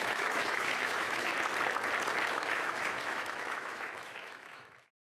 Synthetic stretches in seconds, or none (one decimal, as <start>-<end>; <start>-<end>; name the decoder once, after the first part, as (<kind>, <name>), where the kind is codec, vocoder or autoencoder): 0.0-1.3 (autoencoder, DAC-VAE); 2.3-5.0